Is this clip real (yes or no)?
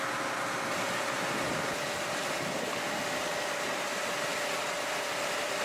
yes